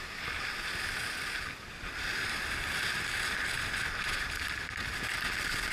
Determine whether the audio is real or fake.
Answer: real